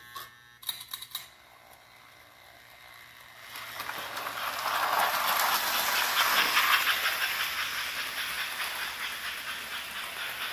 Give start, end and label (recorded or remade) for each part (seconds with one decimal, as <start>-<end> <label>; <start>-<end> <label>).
0.0-10.5 recorded